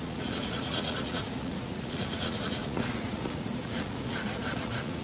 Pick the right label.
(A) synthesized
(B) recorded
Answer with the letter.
A